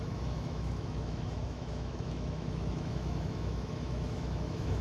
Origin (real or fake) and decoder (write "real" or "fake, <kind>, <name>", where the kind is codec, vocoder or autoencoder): fake, autoencoder, DAC-VAE